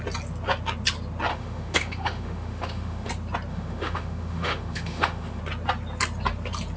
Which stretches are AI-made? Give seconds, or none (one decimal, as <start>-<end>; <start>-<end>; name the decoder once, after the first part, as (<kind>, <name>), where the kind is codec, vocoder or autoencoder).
1.3-3.1 (autoencoder, DAC-VAE); 3.5-5.4